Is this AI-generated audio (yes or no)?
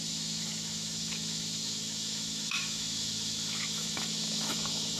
yes